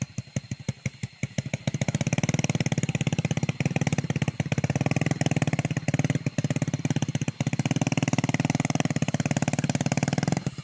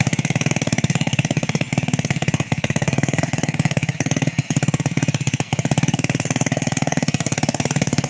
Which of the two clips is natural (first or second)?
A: first